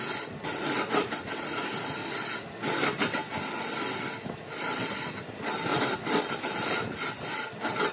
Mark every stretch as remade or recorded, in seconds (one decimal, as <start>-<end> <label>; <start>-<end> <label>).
0.0-7.9 recorded